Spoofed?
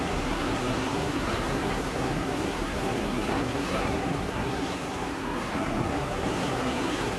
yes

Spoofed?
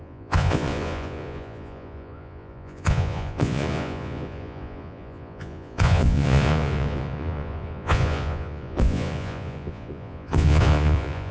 yes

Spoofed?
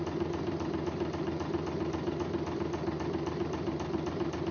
yes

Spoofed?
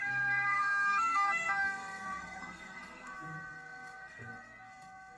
yes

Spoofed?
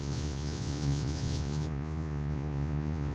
yes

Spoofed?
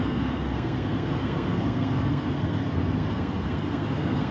yes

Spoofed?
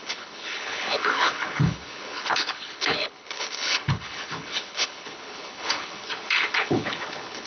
yes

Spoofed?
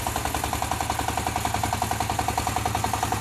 no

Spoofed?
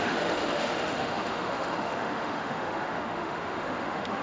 yes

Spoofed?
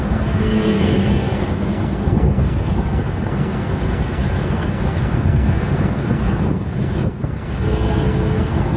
yes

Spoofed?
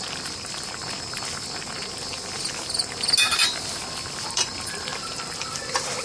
no